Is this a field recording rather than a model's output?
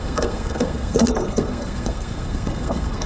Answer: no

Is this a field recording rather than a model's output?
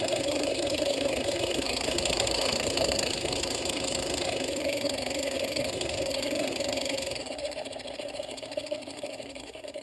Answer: no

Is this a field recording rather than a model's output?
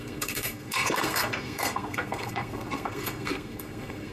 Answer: no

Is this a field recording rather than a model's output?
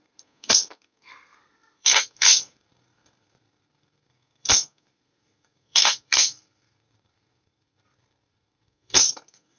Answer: no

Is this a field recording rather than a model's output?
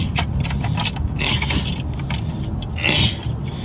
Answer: yes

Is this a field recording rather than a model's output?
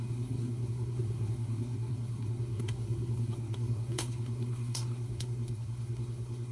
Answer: no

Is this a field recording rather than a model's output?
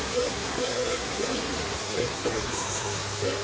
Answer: no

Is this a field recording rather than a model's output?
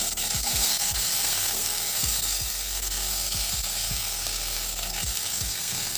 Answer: no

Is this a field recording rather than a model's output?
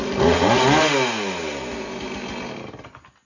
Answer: yes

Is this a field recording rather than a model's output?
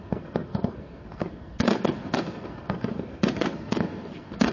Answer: no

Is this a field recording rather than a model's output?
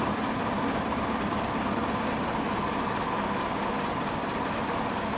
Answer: yes